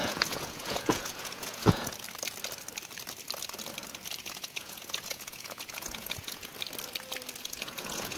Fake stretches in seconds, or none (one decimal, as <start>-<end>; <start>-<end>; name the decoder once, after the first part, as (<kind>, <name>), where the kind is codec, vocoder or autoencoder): 0.0-1.9 (vocoder, Vocos); 4.2-6.5; 7.4-8.2